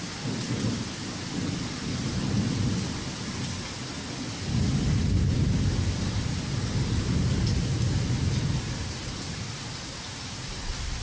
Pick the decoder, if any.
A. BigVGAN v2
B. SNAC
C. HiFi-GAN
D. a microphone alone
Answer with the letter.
D